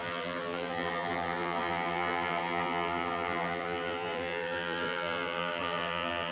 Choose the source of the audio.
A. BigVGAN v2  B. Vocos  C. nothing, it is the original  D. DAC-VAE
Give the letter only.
A